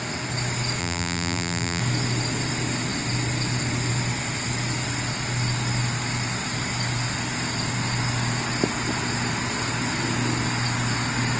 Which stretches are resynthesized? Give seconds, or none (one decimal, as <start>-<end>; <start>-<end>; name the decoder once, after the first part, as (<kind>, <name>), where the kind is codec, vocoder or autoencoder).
0.8-1.8 (vocoder, BigVGAN v2)